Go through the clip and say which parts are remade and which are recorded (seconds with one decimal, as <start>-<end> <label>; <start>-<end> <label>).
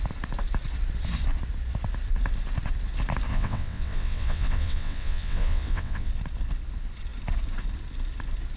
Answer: 0.0-3.3 recorded; 3.3-6.1 remade; 6.1-8.6 recorded